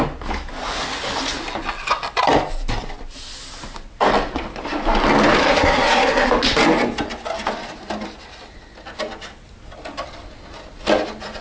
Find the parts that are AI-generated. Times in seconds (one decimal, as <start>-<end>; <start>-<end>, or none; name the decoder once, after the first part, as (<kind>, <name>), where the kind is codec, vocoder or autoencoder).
5.4-6.3 (codec, SNAC)